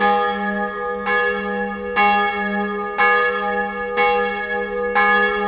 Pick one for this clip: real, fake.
real